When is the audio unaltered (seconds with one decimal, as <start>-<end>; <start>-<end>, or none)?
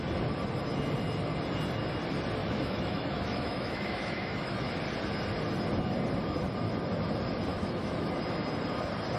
0.0-2.4; 4.7-7.5; 8.1-9.2